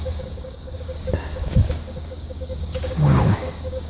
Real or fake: fake